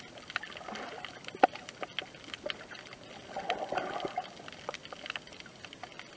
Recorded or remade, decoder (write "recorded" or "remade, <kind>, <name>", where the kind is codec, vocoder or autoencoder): recorded